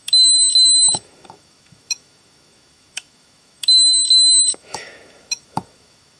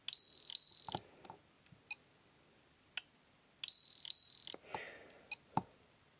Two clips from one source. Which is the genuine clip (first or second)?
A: second